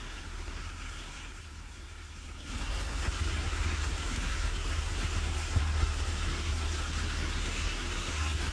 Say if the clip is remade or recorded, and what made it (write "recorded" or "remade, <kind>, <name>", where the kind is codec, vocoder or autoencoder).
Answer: remade, codec, SNAC